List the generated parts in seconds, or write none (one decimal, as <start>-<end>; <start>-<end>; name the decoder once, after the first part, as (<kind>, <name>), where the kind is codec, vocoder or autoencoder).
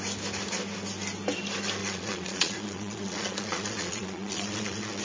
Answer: 1.8-5.0 (vocoder, Vocos)